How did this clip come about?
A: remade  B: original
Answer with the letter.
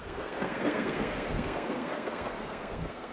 A